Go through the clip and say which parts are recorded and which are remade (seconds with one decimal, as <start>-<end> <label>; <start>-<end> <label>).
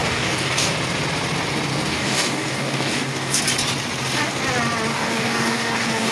0.0-0.7 remade; 0.7-1.7 recorded; 1.7-3.4 remade; 3.4-4.9 recorded; 4.9-6.1 remade